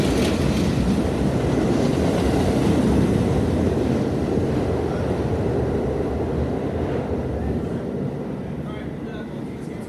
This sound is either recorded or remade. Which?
recorded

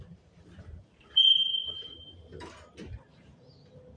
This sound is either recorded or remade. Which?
remade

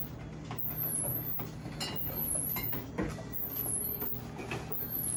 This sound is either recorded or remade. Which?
recorded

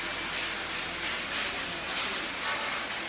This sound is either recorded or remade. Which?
recorded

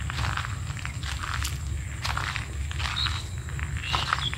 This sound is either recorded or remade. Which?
recorded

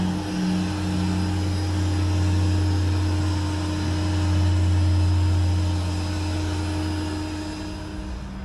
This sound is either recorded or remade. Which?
recorded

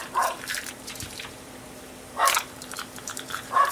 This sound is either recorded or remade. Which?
remade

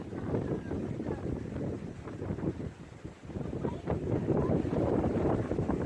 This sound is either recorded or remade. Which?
remade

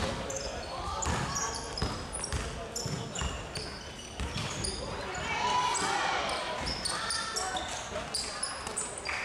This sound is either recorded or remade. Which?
recorded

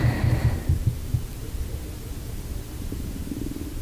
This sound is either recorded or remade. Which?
recorded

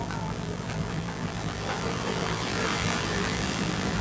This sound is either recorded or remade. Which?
remade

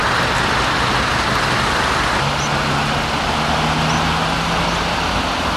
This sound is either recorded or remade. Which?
recorded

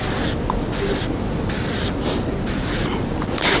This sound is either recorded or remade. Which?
recorded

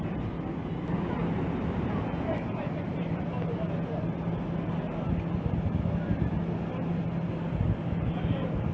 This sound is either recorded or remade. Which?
recorded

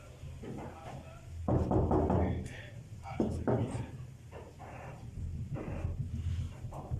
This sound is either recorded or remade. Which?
recorded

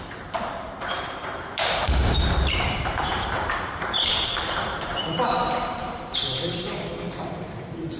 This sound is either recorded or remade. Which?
remade